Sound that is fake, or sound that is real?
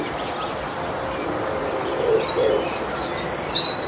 real